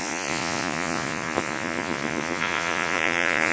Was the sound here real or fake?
fake